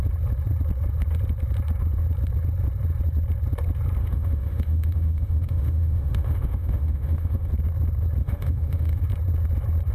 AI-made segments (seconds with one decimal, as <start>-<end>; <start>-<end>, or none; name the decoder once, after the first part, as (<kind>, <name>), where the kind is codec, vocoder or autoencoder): 4.0-7.5 (autoencoder, DAC-VAE); 8.2-9.0